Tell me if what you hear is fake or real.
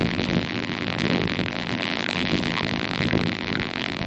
fake